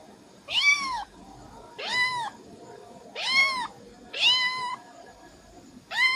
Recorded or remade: remade